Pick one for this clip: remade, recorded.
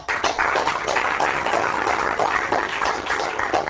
remade